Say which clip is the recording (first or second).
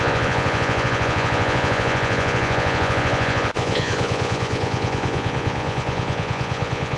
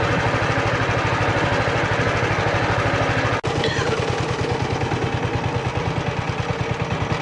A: second